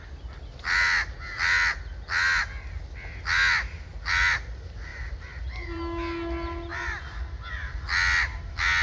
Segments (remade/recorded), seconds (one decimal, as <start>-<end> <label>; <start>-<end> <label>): 0.0-4.9 recorded; 4.9-5.8 remade; 5.8-6.7 recorded; 6.7-7.2 remade; 7.2-8.8 recorded